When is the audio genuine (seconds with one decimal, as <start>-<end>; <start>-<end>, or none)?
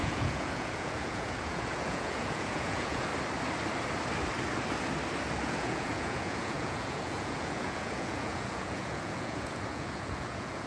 3.1-5.4